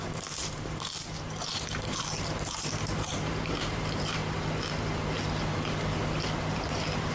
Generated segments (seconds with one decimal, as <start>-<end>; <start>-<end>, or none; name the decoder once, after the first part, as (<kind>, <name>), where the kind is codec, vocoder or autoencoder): 0.0-4.2 (vocoder, BigVGAN v2)

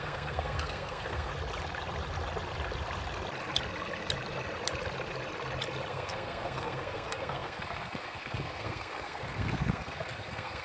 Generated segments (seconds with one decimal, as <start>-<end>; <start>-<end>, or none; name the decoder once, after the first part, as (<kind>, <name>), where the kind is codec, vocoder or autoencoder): 0.0-1.3 (codec, SNAC); 5.9-10.6

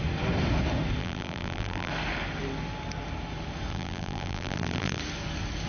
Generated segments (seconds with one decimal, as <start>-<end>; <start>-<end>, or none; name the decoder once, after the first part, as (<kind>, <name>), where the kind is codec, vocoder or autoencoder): 1.0-1.9 (vocoder, BigVGAN v2); 3.7-5.0